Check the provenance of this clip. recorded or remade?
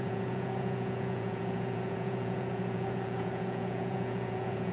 remade